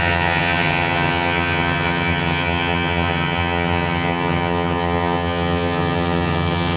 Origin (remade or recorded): remade